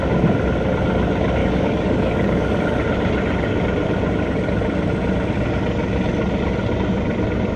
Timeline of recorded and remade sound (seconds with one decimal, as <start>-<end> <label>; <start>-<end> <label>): 0.0-1.4 recorded; 1.4-2.5 remade; 2.5-7.6 recorded